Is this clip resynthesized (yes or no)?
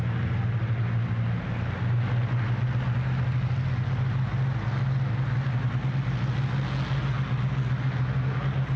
no